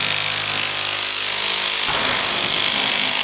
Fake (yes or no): no